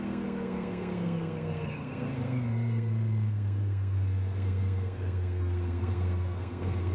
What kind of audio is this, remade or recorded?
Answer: remade